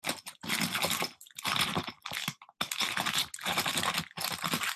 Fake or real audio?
real